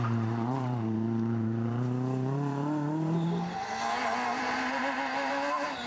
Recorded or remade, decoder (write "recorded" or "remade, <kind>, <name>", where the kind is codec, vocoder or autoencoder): remade, vocoder, BigVGAN v2